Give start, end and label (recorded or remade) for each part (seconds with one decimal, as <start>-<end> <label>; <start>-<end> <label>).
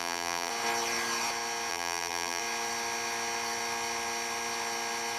0.0-0.5 remade; 0.5-1.7 recorded; 1.7-2.4 remade; 2.4-5.2 recorded